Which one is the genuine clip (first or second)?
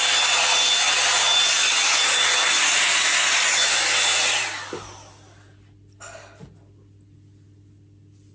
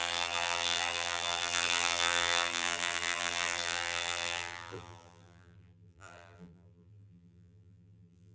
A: first